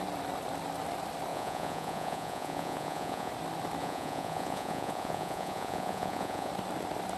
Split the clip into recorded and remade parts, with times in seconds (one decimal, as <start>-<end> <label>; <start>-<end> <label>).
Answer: 0.0-1.3 recorded; 1.3-3.3 remade; 3.3-3.8 recorded; 3.8-6.5 remade; 6.5-7.2 recorded